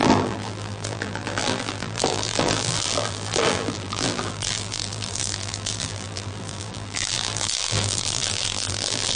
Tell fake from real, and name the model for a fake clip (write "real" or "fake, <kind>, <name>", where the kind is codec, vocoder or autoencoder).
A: fake, vocoder, BigVGAN v2